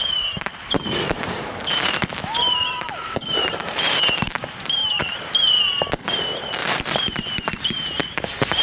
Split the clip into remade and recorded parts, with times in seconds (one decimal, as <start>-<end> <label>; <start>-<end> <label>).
0.0-5.0 remade; 5.0-6.6 recorded; 6.6-7.2 remade; 7.2-8.6 recorded